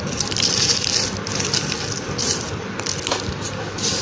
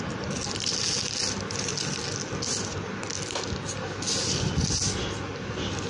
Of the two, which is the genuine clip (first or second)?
second